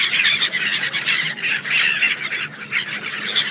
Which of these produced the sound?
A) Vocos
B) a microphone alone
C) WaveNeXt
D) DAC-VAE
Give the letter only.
B